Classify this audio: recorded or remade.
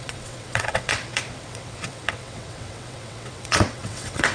remade